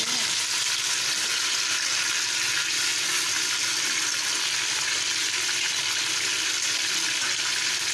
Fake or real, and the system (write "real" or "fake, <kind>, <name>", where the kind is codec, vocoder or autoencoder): real